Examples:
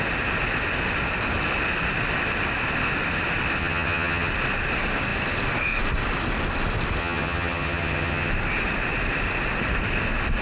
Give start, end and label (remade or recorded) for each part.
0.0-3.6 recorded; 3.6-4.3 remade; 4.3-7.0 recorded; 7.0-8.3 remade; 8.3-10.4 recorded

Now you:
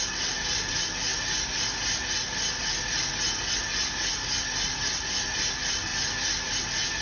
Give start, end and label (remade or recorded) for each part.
0.0-7.0 recorded